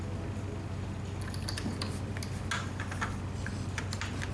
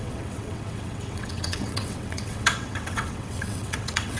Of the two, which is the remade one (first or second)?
second